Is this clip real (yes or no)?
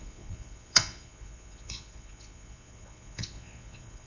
no